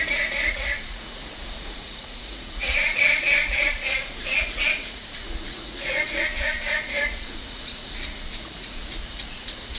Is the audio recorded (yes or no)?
no